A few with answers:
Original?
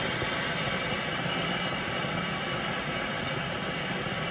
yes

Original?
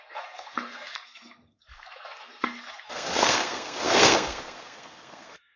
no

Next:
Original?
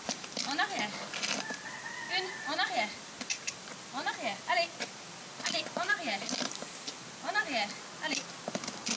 no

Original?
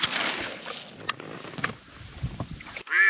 yes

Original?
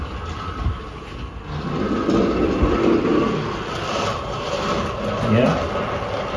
yes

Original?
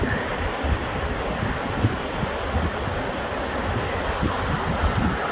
yes